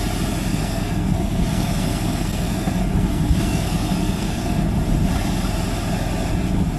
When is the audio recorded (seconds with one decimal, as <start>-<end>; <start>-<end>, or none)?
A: 0.0-0.5; 4.6-6.8